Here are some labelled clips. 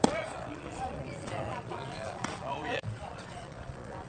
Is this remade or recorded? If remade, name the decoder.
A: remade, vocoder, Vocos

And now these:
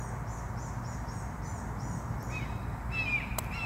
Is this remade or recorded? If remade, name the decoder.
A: recorded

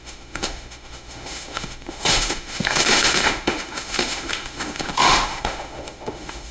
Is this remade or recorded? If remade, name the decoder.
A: remade, autoencoder, DAC-VAE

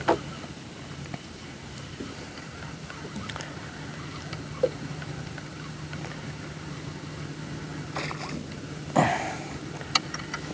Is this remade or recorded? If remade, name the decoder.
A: recorded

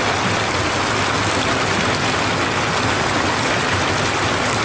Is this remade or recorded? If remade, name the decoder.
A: recorded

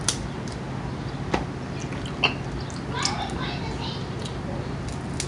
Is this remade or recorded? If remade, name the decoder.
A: recorded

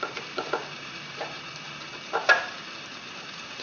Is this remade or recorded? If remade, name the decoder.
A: remade, vocoder, BigVGAN v2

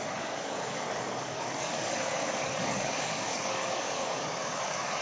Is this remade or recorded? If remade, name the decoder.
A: remade, codec, DAC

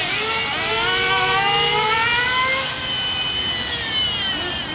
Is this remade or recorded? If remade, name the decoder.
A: recorded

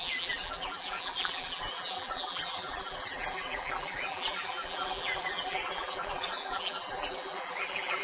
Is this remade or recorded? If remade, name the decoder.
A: remade, vocoder, BigVGAN v2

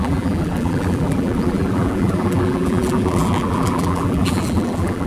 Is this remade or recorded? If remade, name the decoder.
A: remade, vocoder, BigVGAN v2